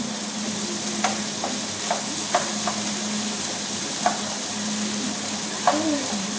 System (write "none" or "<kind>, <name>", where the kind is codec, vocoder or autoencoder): none